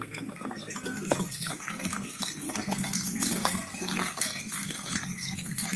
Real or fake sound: fake